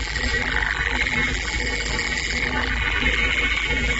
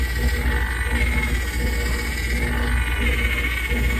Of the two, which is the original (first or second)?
second